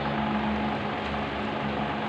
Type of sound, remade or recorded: recorded